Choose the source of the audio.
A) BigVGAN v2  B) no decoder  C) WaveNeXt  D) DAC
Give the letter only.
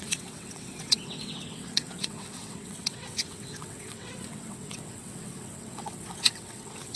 C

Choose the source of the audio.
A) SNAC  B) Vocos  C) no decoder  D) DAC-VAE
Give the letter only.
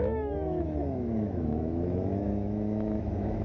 D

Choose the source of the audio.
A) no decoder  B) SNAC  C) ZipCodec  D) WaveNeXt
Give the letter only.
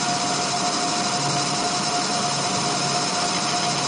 A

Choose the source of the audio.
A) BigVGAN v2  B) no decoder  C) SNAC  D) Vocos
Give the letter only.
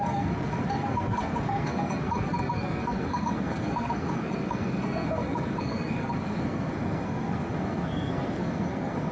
C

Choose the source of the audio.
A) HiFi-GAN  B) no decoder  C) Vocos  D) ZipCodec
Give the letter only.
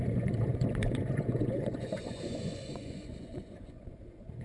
C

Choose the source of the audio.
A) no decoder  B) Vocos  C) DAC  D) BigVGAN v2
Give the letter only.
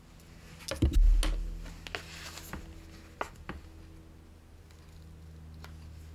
A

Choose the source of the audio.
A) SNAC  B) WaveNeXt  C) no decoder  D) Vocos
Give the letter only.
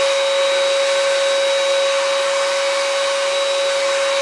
C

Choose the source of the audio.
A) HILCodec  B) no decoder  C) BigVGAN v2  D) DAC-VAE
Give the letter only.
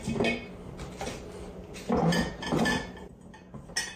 B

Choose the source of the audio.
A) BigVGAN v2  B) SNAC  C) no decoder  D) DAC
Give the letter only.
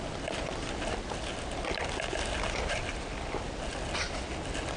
C